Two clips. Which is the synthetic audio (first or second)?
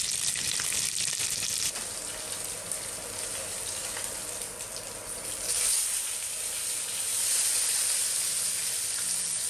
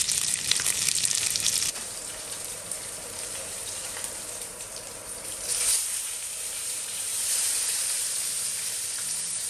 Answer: second